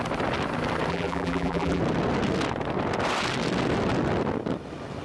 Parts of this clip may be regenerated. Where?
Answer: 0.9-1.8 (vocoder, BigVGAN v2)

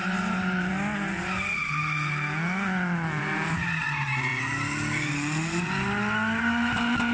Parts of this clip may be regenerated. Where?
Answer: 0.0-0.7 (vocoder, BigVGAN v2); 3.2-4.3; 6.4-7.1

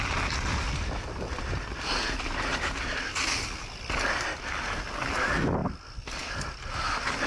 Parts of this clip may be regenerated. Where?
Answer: none